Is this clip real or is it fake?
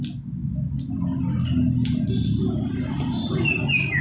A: real